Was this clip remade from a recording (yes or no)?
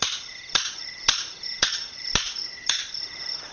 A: yes